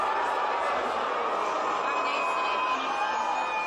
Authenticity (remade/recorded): recorded